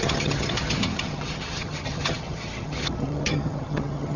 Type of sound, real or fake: fake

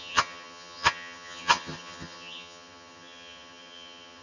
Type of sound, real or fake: fake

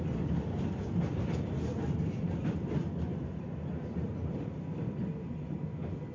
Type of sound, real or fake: real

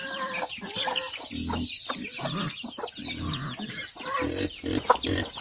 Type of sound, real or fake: real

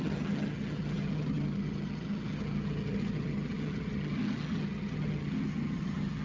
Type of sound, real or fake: fake